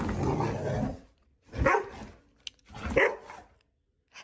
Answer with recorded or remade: recorded